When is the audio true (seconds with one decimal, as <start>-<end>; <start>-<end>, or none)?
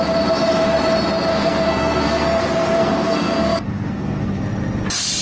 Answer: 0.0-1.3; 4.4-5.2